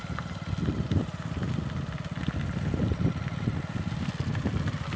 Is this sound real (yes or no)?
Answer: yes